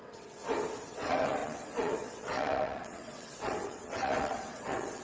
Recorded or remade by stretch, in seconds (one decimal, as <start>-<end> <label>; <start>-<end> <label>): 0.0-0.4 remade; 0.4-0.9 recorded; 0.9-5.0 remade